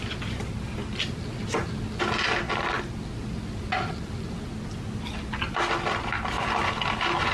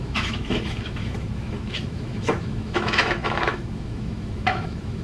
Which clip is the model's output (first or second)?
second